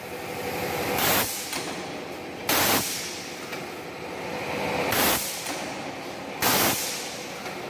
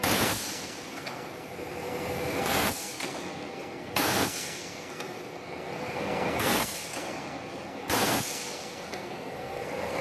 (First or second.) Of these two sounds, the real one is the first